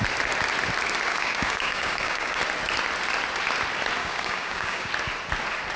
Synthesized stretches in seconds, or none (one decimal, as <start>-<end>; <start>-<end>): 1.1-2.4; 4.0-4.9